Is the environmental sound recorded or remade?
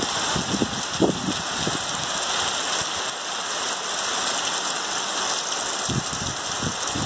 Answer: recorded